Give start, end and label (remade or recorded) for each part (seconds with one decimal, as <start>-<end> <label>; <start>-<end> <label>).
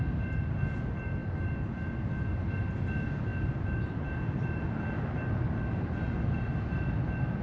0.0-7.4 recorded